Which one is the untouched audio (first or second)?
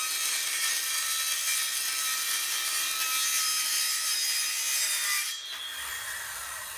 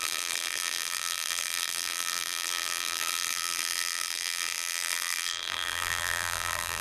first